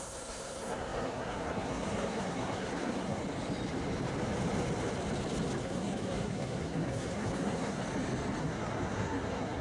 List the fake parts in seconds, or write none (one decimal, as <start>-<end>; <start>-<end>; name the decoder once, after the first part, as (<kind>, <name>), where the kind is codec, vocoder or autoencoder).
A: 0.0-3.2 (codec, SNAC); 5.6-7.8; 8.4-9.6